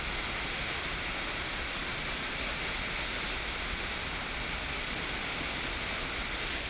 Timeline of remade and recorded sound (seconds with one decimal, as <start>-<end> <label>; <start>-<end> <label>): 0.0-6.7 recorded

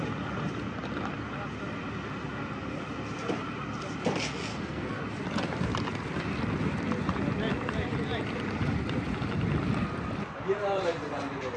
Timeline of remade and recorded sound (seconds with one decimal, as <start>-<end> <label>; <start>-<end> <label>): 0.0-4.5 recorded; 4.5-5.0 remade; 5.0-11.6 recorded

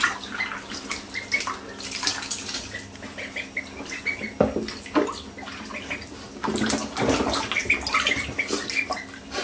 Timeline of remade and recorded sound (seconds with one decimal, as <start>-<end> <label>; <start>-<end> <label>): 0.0-9.4 recorded